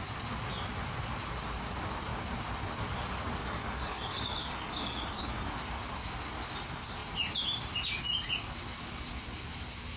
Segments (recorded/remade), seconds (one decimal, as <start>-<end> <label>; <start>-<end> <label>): 0.0-3.4 recorded; 3.4-5.5 remade; 5.5-10.0 recorded